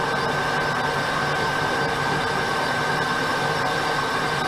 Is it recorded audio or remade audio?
recorded